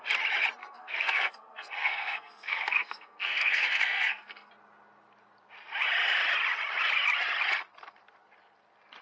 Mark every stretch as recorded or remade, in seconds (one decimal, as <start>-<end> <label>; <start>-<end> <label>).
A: 0.0-0.6 recorded; 0.6-4.5 remade; 4.5-9.0 recorded